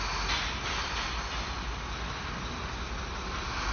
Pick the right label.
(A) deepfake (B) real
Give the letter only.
B